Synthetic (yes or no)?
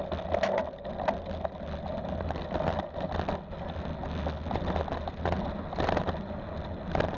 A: no